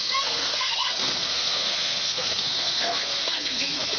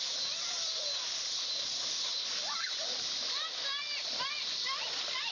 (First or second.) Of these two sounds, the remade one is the first